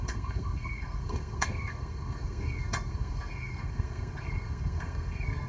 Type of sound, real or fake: fake